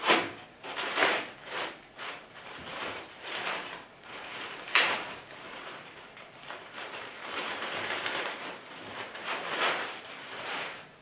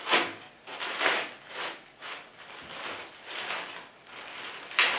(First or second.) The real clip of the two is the second